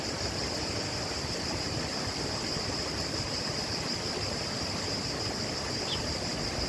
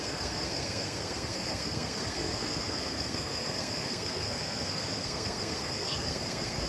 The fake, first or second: second